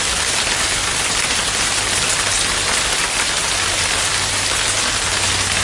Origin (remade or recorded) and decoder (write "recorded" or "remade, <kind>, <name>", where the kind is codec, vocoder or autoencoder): recorded